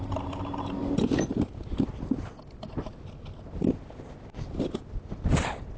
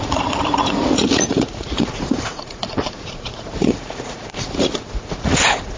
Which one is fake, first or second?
second